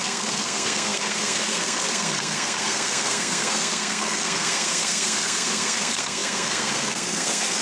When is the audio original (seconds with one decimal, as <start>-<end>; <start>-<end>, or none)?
none